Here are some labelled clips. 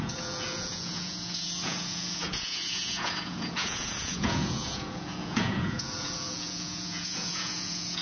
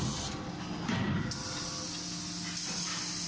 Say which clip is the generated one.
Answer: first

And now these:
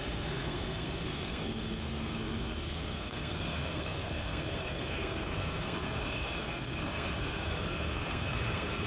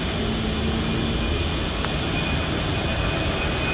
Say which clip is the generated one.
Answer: first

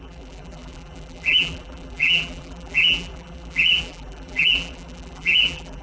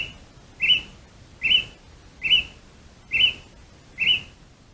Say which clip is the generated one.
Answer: first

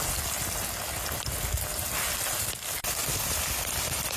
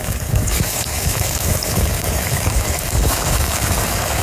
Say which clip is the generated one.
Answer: second